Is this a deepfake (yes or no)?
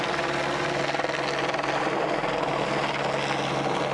no